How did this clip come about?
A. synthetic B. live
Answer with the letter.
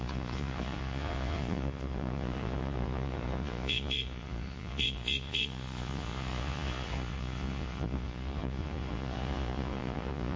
A